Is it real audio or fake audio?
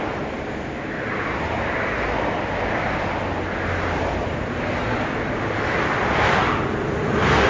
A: real